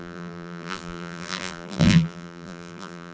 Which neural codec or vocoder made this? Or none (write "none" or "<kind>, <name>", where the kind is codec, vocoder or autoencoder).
vocoder, BigVGAN v2